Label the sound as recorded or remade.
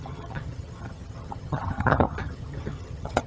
remade